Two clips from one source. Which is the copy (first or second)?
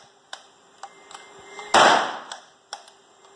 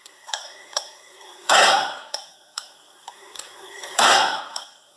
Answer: second